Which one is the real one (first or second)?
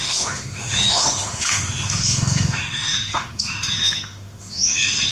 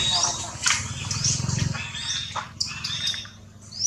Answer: second